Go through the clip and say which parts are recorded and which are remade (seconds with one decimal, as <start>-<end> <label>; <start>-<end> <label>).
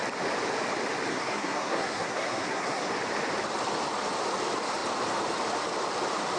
0.0-1.1 recorded; 1.1-2.9 remade; 2.9-6.4 recorded